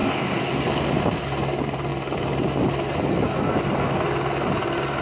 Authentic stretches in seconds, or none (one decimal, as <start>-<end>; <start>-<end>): 0.5-5.0